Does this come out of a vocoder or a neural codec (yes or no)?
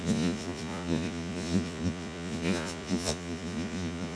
yes